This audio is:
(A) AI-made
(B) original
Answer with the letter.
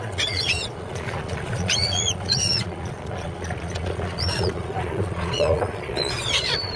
A